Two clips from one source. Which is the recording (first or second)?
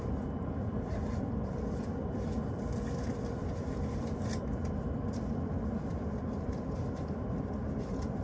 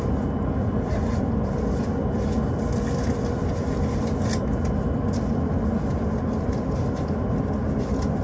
second